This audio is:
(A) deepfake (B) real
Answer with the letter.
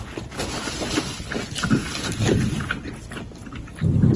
B